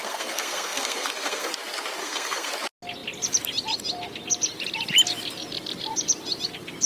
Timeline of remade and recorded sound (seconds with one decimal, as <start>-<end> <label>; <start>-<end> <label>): 0.0-1.5 remade; 1.5-2.0 recorded; 2.0-2.5 remade; 2.5-6.9 recorded